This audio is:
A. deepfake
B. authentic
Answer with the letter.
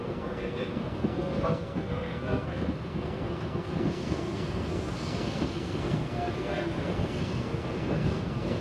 A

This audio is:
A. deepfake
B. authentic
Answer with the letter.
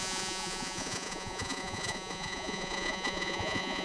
A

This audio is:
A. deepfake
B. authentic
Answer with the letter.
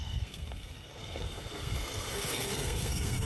A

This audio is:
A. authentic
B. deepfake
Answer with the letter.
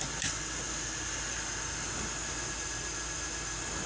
A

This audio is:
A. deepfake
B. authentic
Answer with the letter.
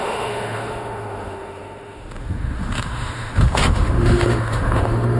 A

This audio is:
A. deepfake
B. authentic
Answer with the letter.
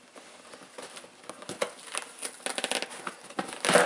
B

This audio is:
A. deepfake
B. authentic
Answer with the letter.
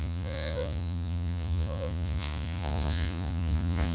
A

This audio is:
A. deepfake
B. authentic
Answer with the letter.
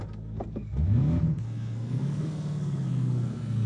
A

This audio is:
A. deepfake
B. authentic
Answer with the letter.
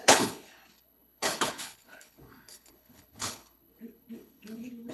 A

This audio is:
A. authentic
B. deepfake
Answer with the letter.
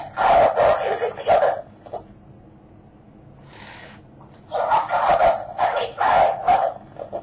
A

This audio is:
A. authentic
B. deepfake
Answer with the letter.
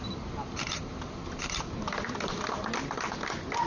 A